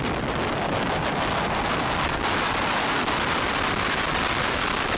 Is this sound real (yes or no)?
yes